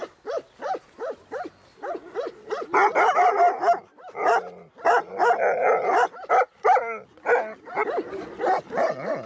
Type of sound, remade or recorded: recorded